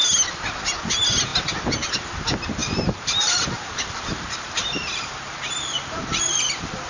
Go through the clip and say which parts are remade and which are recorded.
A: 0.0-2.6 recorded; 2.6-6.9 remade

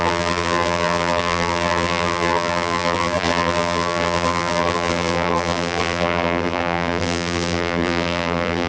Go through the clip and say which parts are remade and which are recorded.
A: 0.0-8.7 remade

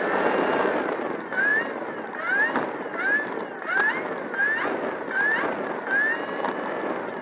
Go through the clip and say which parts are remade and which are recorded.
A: 0.0-7.2 recorded

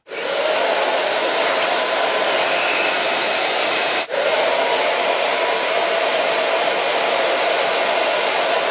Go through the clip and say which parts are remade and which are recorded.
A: 0.0-1.2 recorded; 1.2-6.4 remade; 6.4-6.9 recorded; 6.9-7.6 remade; 7.6-8.7 recorded

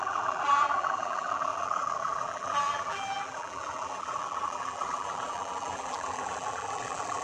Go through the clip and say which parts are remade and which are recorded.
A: 0.0-7.2 remade

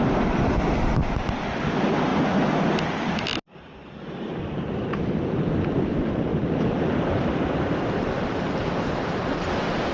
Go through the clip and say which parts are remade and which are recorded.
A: 0.0-3.8 recorded; 3.8-5.7 remade; 5.7-6.3 recorded; 6.3-8.7 remade; 8.7-9.9 recorded